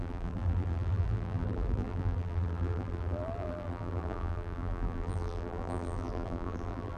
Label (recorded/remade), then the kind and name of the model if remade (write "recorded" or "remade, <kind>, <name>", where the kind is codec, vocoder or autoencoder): remade, vocoder, BigVGAN v2